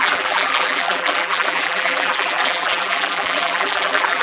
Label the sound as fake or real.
fake